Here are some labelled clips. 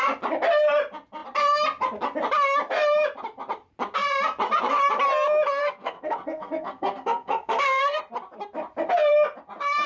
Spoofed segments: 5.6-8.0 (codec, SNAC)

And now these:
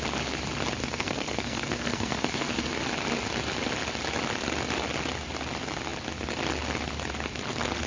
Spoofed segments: 0.8-2.7 (codec, SNAC)

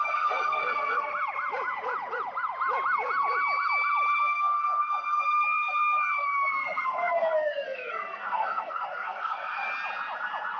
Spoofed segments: 0.0-1.1 (codec, SNAC); 4.2-9.7

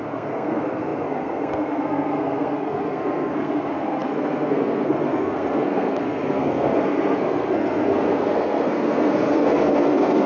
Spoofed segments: 0.0-10.3 (codec, SNAC)